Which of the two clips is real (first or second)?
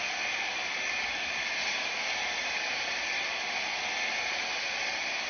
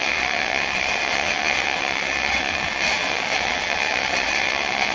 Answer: first